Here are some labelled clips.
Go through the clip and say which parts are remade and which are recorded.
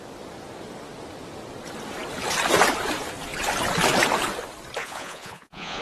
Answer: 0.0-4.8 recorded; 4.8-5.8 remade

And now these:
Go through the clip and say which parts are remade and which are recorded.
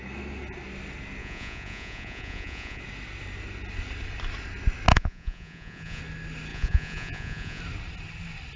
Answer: 0.0-1.2 recorded; 1.2-2.8 remade; 2.8-4.9 recorded; 4.9-6.0 remade; 6.0-6.5 recorded; 6.5-7.6 remade; 7.6-8.6 recorded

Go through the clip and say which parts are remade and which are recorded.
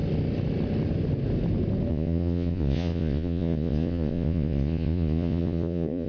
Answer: 0.0-1.9 recorded; 1.9-6.1 remade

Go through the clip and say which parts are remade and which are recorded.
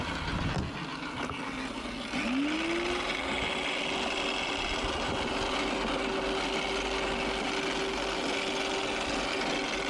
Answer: 0.0-9.9 recorded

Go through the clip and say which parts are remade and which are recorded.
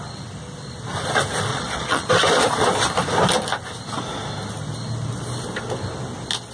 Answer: 0.0-1.5 recorded; 1.5-2.1 remade; 2.1-6.5 recorded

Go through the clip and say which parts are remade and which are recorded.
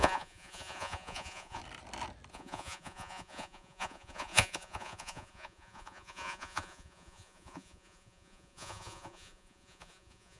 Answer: 0.0-1.6 remade; 1.6-2.3 recorded; 2.3-10.4 remade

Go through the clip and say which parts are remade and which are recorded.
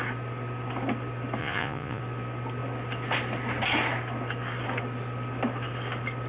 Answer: 0.0-1.4 recorded; 1.4-2.0 remade; 2.0-6.3 recorded